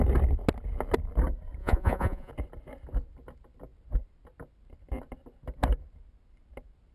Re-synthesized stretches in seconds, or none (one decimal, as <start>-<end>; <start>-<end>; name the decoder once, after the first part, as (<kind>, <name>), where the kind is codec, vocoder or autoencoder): 1.6-2.3 (vocoder, Vocos)